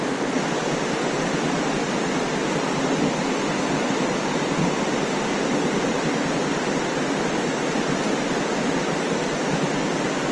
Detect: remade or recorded recorded